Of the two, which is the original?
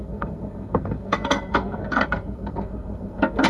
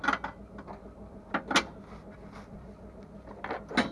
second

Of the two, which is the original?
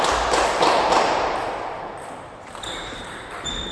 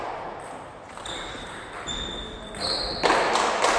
second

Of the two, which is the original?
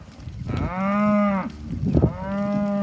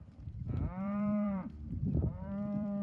first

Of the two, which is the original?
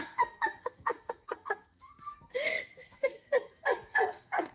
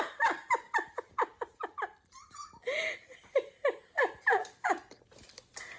second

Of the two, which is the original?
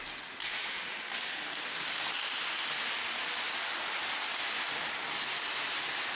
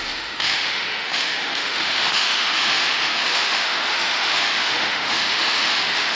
first